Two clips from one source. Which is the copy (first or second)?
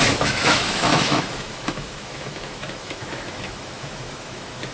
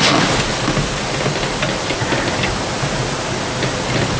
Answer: first